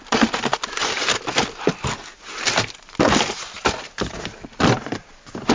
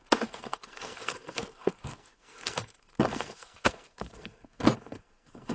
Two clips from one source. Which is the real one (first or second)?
first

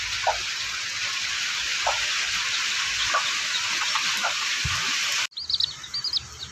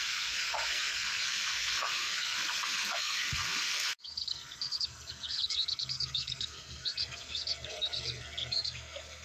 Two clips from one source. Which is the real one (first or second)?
first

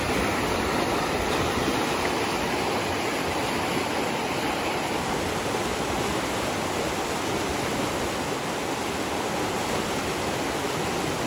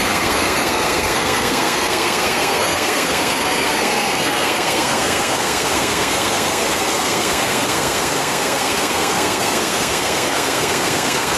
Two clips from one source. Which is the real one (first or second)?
first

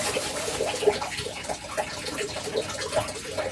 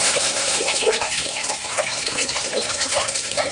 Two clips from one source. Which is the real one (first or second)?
first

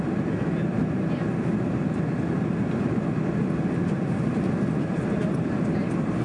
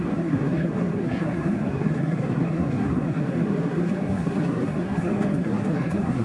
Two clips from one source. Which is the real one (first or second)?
first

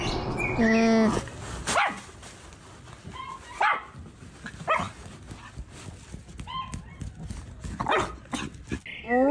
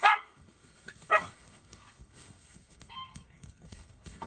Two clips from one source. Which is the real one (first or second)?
first